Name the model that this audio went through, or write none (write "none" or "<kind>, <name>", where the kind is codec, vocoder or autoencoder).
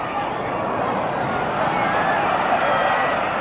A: none